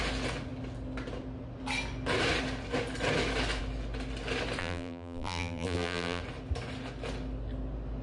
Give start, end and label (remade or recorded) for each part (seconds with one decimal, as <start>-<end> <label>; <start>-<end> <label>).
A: 0.0-4.6 recorded; 4.6-6.2 remade; 6.2-8.0 recorded